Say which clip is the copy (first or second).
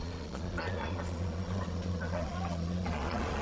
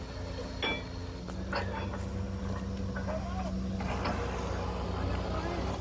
first